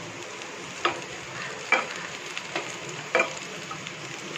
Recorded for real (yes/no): no